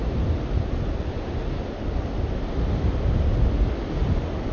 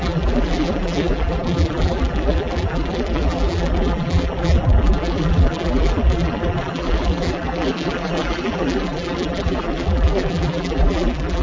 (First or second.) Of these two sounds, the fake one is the second